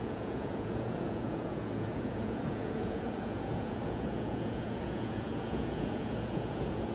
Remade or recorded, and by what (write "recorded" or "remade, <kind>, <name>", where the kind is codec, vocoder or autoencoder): remade, vocoder, Vocos